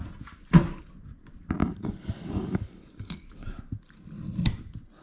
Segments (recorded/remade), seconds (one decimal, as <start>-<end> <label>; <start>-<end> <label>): 0.0-1.6 recorded; 1.6-3.6 remade; 3.6-5.0 recorded